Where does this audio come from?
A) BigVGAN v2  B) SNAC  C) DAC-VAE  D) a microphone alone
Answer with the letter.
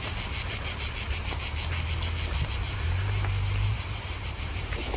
D